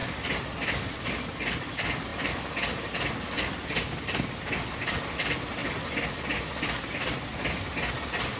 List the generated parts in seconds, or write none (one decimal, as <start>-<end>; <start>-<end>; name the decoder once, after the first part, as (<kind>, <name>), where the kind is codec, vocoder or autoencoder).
none